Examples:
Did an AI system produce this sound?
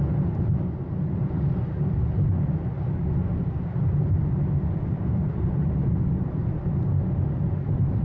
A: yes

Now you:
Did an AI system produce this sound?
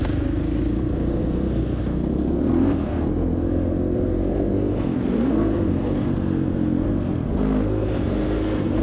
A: yes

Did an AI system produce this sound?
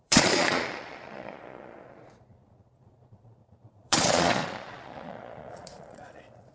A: yes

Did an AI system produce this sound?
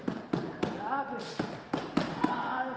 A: no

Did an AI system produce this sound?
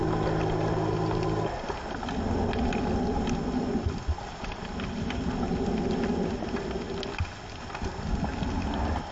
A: no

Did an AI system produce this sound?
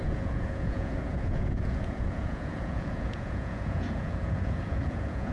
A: yes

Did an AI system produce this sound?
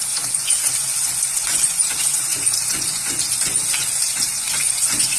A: yes